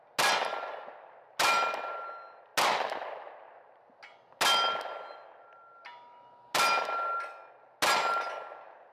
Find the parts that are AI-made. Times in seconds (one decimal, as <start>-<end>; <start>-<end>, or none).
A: none